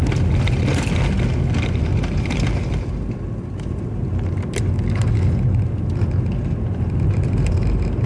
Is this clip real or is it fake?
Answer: real